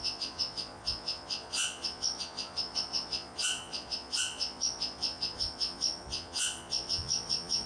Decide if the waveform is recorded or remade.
remade